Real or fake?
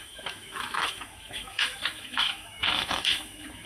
fake